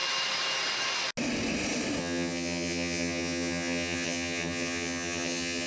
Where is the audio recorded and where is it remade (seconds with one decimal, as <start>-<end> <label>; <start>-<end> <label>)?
0.0-2.0 recorded; 2.0-5.7 remade